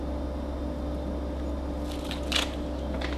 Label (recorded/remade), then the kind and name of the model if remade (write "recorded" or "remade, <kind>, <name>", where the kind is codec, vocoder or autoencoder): recorded